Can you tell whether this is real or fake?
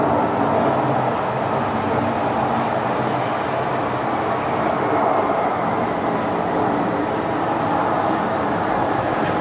real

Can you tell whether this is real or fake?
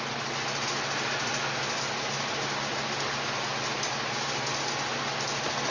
real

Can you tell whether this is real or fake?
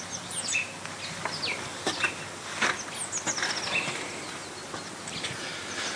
real